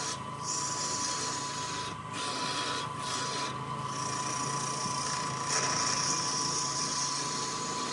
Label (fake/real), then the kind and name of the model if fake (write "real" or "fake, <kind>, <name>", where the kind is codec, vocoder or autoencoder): real